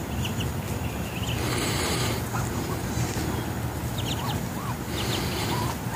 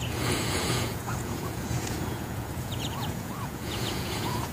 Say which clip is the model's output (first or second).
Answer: second